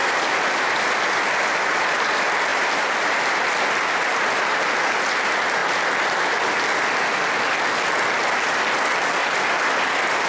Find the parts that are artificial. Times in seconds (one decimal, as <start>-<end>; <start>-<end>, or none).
none